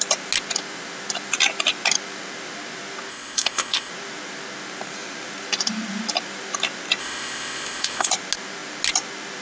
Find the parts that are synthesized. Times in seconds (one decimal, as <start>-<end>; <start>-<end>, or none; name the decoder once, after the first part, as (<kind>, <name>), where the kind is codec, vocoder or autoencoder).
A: 3.1-3.9 (codec, ZipCodec); 7.0-8.1